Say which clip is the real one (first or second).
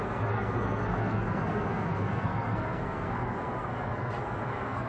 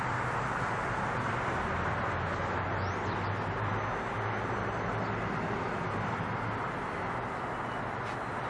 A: second